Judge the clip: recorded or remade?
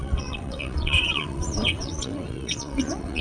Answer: remade